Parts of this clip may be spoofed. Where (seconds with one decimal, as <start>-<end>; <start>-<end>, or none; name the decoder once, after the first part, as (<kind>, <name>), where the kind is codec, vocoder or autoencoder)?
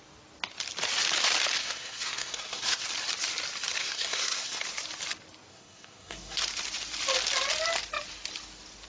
1.6-2.8 (codec, SNAC); 3.8-4.6; 5.5-6.4